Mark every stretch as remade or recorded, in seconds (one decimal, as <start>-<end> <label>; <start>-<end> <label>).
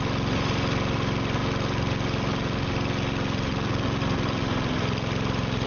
0.0-1.4 remade; 1.4-3.7 recorded; 3.7-5.7 remade